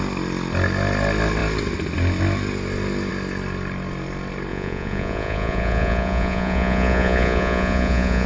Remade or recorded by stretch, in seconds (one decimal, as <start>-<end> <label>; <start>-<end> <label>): 0.0-4.5 recorded; 4.5-8.3 remade